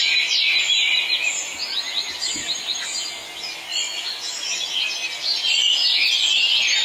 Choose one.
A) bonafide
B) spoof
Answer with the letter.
A